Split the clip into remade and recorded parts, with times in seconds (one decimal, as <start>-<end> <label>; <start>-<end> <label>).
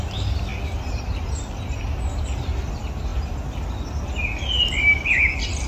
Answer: 0.0-0.5 recorded; 0.5-1.5 remade; 1.5-5.7 recorded